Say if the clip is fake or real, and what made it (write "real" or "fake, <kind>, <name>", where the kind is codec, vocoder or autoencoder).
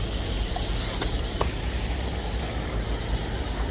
real